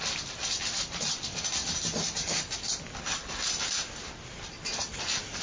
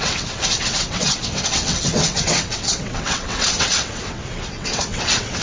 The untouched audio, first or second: first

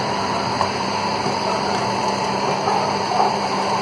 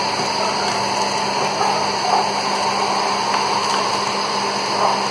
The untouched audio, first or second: second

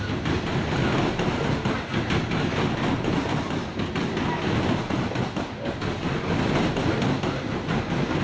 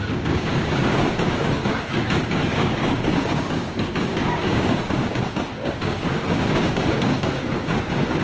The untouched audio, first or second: first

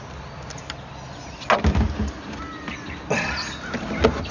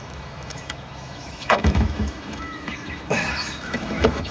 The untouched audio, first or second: first